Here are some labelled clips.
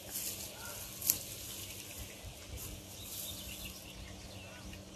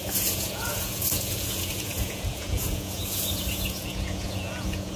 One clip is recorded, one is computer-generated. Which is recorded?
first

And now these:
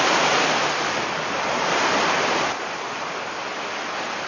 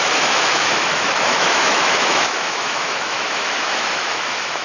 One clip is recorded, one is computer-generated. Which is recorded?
first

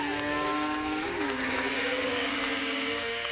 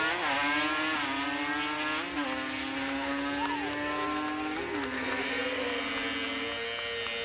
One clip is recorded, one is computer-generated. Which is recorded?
second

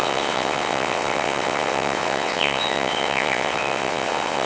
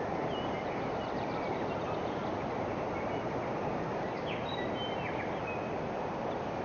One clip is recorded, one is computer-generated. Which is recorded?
second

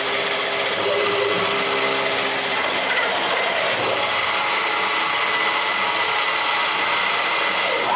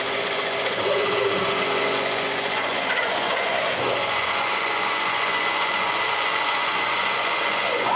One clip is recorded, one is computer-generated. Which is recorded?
first